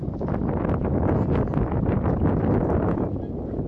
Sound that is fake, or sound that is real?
real